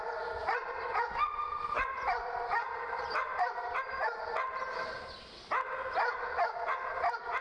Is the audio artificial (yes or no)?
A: no